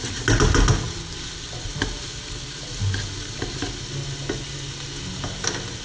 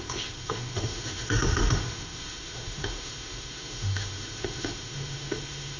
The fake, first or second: second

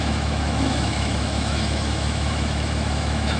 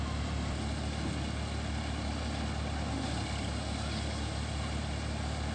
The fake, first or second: first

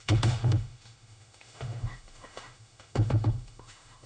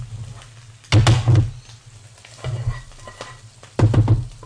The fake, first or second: first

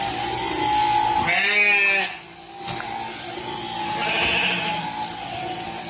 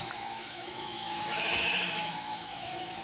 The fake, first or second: second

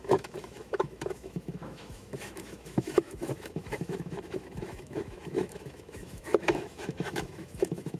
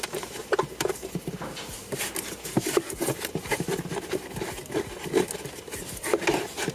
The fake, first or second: first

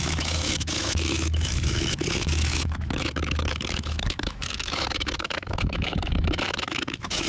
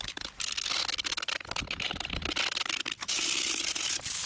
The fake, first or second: first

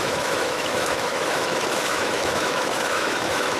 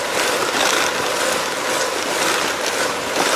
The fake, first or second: first